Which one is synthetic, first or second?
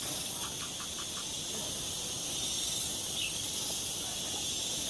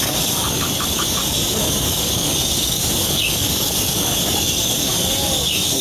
second